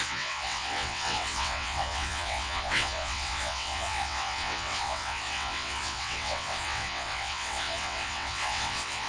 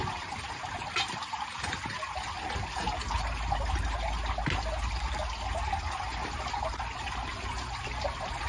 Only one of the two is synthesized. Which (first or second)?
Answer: first